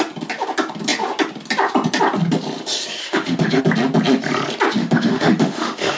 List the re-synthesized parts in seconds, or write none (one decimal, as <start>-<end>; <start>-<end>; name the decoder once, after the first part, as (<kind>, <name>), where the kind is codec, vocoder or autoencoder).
3.0-3.6 (autoencoder, DAC-VAE); 4.8-6.0